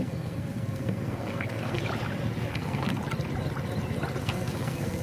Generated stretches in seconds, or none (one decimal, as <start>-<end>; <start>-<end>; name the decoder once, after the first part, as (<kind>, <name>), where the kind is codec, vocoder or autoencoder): 0.0-1.8 (codec, SNAC); 2.5-3.0; 4.2-5.0